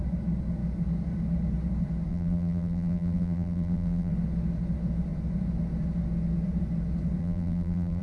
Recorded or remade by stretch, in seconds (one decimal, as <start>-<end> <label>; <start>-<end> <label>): 0.0-2.1 recorded; 2.1-4.1 remade; 4.1-7.2 recorded; 7.2-8.0 remade